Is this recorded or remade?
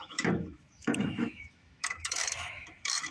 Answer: remade